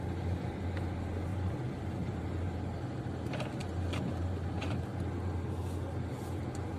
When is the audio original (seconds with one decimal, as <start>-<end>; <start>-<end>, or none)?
0.0-1.3; 2.2-6.8